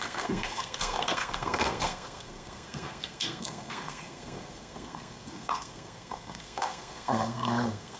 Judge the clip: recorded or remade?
remade